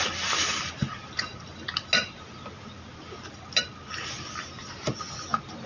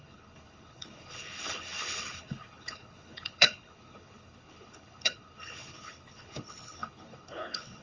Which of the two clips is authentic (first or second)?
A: first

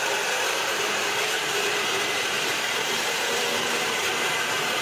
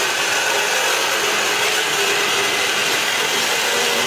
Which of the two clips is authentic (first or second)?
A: second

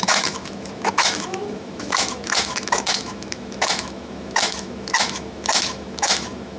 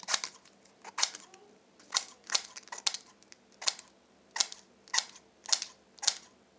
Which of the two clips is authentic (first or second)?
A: second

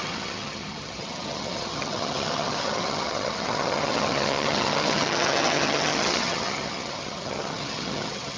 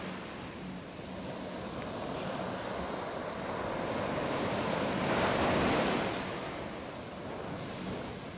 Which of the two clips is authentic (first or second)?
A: second